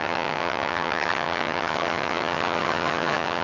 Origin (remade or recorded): remade